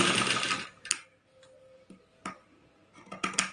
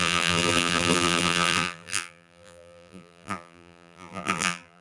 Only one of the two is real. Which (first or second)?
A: first